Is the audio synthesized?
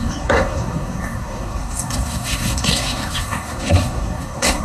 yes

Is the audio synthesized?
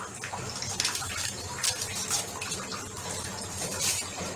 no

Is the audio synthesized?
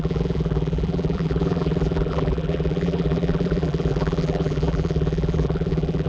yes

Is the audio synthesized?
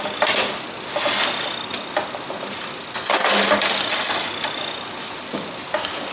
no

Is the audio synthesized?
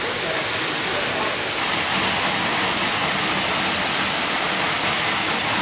no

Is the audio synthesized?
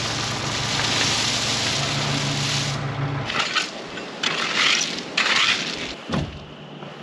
no